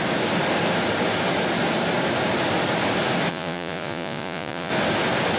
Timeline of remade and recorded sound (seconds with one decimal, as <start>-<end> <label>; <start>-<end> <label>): 0.0-3.3 recorded; 3.3-4.7 remade; 4.7-5.4 recorded